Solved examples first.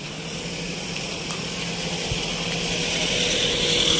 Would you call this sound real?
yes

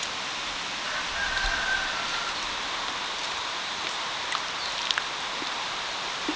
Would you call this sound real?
yes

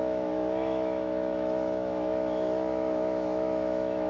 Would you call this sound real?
no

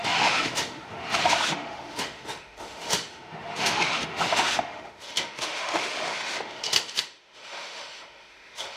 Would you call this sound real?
no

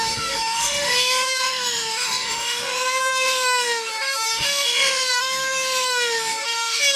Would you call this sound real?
no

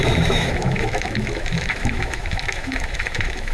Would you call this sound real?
no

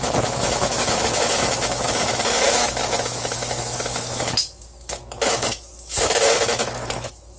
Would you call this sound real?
no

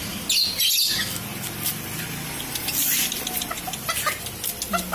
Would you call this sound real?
yes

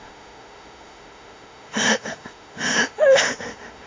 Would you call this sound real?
no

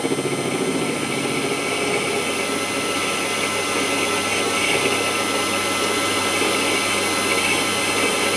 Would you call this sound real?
yes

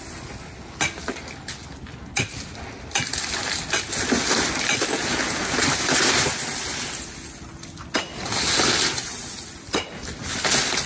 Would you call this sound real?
yes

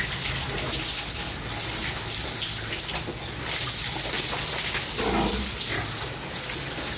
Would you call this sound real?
yes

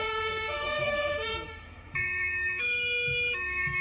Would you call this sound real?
no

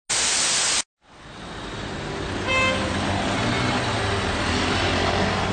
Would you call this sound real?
yes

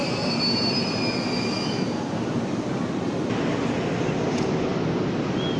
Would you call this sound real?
yes